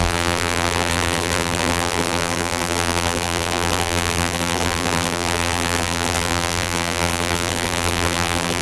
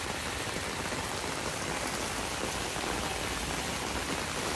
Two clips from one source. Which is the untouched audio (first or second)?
second